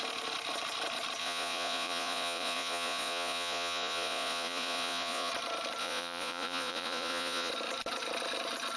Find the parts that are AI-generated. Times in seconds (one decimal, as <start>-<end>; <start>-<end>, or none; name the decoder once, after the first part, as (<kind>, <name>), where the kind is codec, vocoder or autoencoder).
1.2-5.3 (vocoder, Vocos); 5.8-7.5